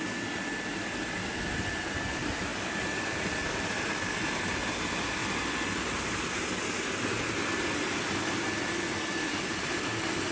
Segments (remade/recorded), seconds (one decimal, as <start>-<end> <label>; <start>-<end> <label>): 0.0-10.3 recorded